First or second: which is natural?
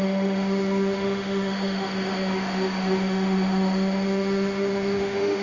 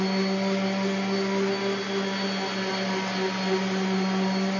second